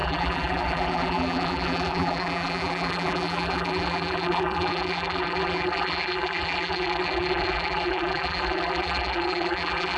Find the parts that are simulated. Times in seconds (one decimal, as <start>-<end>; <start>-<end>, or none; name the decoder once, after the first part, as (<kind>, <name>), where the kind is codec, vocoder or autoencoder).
0.0-10.0 (vocoder, BigVGAN v2)